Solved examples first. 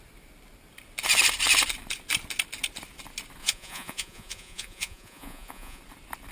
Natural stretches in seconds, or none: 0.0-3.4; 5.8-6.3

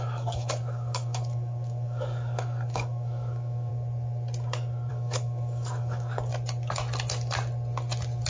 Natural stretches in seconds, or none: 3.7-4.9; 6.3-8.3